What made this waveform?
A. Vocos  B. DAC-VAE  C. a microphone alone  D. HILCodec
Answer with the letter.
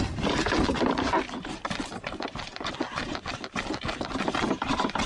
C